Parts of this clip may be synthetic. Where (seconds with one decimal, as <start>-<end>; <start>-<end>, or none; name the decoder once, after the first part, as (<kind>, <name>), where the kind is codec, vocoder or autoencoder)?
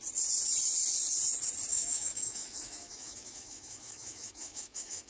1.7-5.1 (autoencoder, DAC-VAE)